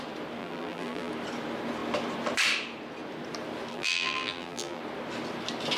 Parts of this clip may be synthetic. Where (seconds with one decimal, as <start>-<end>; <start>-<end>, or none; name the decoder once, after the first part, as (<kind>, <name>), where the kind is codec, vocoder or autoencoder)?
0.4-1.1 (vocoder, BigVGAN v2); 3.7-4.8